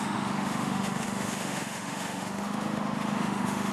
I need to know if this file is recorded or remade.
remade